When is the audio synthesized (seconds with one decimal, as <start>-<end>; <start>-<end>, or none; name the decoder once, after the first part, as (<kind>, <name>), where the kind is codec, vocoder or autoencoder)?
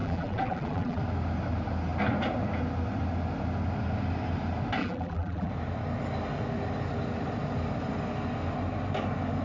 0.0-1.0 (vocoder, BigVGAN v2); 4.8-5.5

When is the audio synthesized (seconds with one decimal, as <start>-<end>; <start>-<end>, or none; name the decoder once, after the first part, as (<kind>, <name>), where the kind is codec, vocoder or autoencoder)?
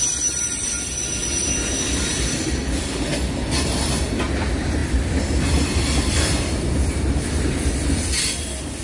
1.4-2.9 (vocoder, BigVGAN v2); 4.8-6.3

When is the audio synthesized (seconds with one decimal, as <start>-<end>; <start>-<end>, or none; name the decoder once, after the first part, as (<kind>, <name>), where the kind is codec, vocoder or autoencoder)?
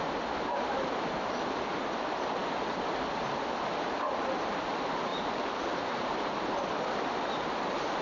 5.1-6.2 (vocoder, BigVGAN v2)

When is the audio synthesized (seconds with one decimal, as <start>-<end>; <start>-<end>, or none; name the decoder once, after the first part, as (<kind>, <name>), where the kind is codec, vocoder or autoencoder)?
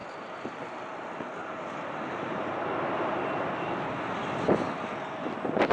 0.0-0.8 (vocoder, BigVGAN v2); 1.4-2.3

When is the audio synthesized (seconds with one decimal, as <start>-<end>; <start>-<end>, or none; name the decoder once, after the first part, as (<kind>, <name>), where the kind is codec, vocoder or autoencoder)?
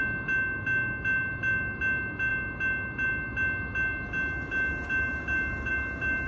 none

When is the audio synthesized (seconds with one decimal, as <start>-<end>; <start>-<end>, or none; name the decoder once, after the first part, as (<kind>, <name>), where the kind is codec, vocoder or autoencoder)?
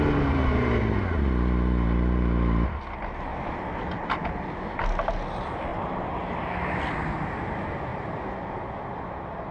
5.7-6.6 (vocoder, BigVGAN v2); 7.9-8.5